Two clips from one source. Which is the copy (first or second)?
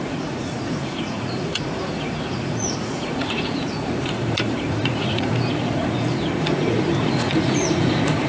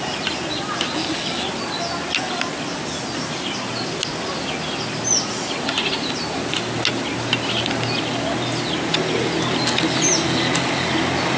first